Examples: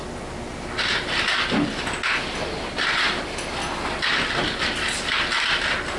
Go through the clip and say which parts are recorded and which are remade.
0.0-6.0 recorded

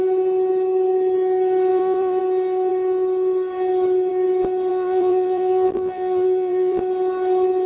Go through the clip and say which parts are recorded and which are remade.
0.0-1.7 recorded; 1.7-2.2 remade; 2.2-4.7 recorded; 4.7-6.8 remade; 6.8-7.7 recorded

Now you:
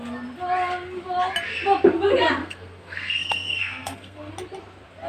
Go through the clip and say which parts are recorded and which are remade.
0.0-2.4 recorded; 2.4-4.3 remade; 4.3-5.1 recorded